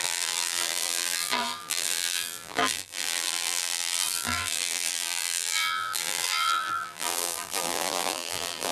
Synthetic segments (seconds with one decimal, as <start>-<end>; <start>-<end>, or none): 0.0-8.7